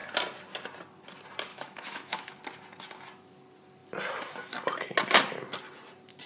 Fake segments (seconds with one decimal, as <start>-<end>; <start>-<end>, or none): 1.5-2.3